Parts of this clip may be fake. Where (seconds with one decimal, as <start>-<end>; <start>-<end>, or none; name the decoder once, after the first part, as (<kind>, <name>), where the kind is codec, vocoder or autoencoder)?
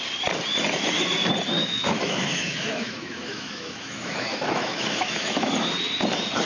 1.6-5.5 (autoencoder, DAC-VAE)